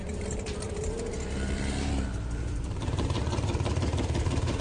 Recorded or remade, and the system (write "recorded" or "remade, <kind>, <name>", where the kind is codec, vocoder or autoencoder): remade, vocoder, BigVGAN v2